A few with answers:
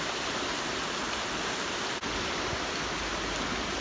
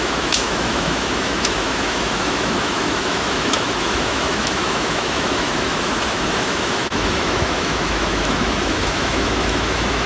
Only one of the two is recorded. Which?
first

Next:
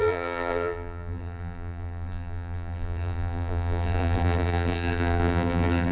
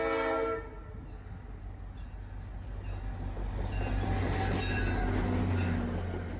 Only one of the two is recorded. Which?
second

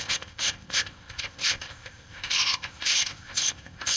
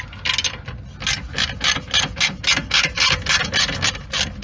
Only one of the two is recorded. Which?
second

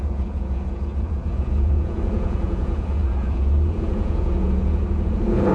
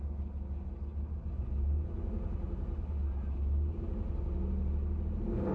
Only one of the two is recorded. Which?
second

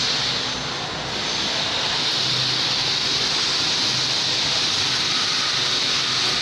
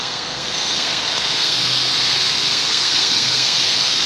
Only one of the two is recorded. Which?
first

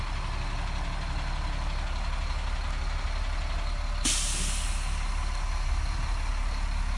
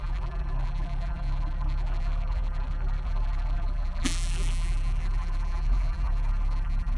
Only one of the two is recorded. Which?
first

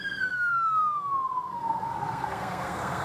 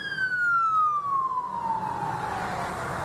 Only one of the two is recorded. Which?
second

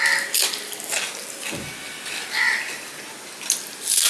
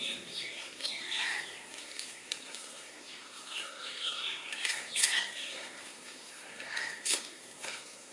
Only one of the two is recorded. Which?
first